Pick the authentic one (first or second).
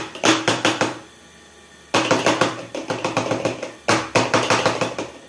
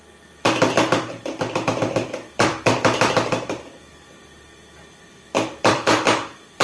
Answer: first